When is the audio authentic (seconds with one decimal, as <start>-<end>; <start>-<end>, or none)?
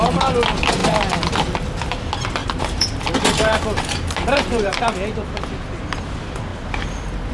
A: 0.0-2.4; 4.8-7.3